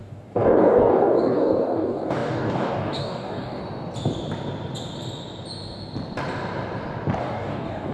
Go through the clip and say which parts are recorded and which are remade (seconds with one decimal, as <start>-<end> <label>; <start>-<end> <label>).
0.0-3.6 remade; 3.6-7.2 recorded; 7.2-7.9 remade